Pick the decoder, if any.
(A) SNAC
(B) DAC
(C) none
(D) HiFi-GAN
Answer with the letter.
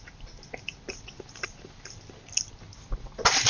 C